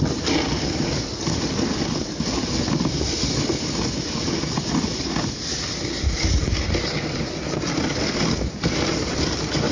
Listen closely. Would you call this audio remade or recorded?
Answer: recorded